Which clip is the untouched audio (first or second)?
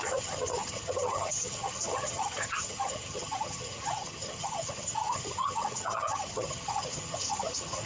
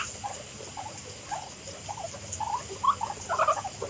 second